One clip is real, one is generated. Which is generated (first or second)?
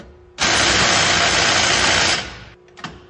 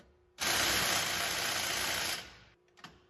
second